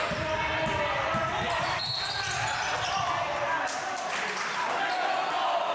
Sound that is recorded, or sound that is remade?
recorded